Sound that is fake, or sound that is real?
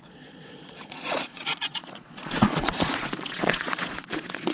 fake